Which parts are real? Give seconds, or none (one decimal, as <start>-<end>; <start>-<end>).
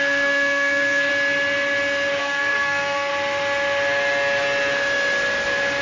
1.1-2.2; 3.1-5.8